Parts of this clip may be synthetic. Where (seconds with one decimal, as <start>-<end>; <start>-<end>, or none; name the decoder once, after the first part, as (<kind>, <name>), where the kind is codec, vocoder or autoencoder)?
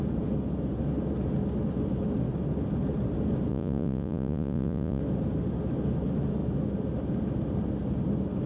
3.5-5.0 (vocoder, Vocos)